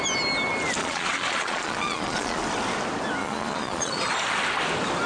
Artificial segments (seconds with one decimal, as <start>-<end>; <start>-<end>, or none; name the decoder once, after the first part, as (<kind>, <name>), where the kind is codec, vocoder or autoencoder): 0.8-2.4 (vocoder, Vocos); 3.2-4.0